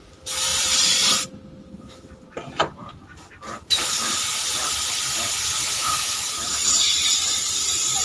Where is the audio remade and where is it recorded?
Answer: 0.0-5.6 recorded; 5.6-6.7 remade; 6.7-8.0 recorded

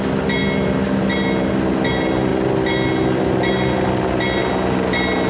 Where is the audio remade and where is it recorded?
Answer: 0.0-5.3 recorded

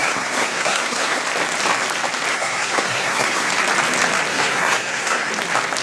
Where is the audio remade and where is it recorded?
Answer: 0.0-1.2 remade; 1.2-2.3 recorded; 2.3-3.5 remade; 3.5-4.3 recorded; 4.3-5.3 remade; 5.3-5.8 recorded

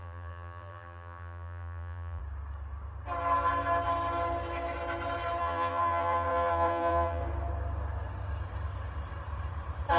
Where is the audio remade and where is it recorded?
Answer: 0.0-2.2 remade; 2.2-5.4 recorded; 5.4-7.2 remade; 7.2-10.0 recorded

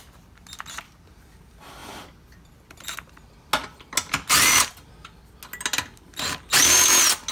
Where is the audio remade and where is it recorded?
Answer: 0.0-7.3 recorded